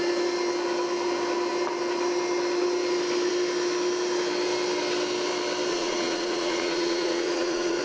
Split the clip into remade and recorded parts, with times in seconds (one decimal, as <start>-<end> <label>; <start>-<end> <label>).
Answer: 0.0-5.7 recorded; 5.7-7.8 remade